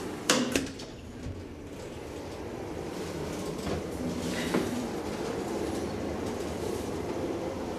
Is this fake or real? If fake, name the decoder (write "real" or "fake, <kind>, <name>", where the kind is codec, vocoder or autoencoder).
fake, vocoder, BigVGAN v2